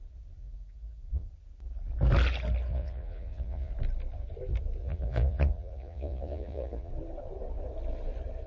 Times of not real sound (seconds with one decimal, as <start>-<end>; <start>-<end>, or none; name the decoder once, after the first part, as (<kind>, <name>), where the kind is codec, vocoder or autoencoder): 0.4-1.3 (vocoder, Vocos); 2.7-3.7; 4.8-6.9